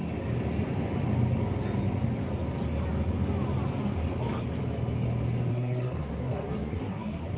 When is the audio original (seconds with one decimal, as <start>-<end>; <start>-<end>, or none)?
0.0-5.5